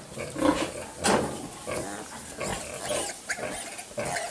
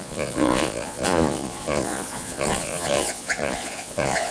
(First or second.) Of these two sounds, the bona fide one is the first